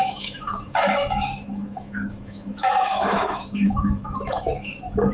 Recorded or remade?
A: remade